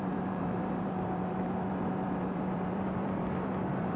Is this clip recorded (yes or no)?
no